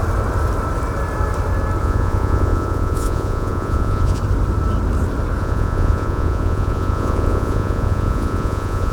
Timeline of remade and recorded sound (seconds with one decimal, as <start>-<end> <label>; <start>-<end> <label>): 0.0-1.8 recorded; 1.8-4.2 remade; 4.2-5.4 recorded; 5.4-8.9 remade